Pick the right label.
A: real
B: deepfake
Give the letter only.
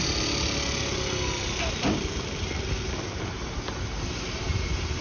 A